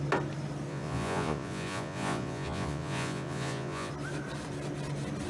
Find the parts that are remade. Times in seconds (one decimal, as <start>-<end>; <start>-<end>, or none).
0.7-3.9